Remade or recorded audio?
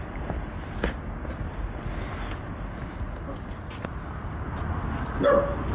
recorded